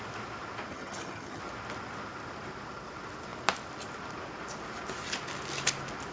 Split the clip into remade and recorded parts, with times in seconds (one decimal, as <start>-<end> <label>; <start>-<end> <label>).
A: 0.0-0.7 recorded; 0.7-1.4 remade; 1.4-6.1 recorded